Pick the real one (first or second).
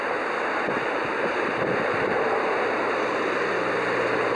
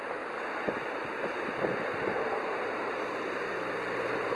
first